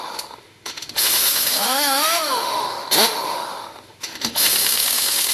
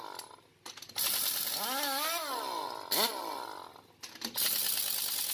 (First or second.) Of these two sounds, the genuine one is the second